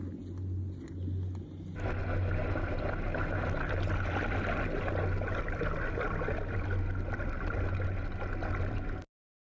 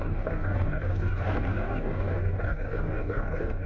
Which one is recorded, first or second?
first